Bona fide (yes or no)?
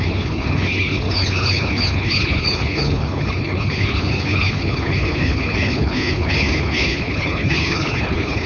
no